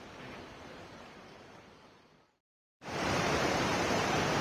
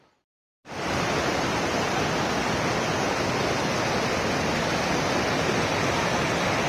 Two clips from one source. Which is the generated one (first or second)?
first